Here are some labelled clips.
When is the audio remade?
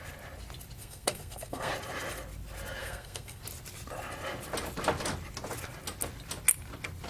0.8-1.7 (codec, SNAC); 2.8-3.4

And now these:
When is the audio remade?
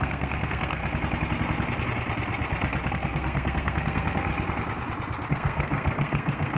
0.0-0.8 (codec, SNAC); 2.9-4.3; 5.3-6.6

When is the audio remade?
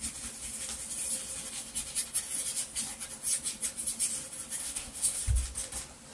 4.6-5.2 (codec, SNAC)